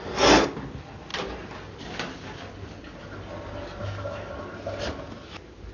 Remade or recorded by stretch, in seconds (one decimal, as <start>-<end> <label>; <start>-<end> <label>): 0.0-3.8 recorded; 3.8-4.3 remade; 4.3-5.7 recorded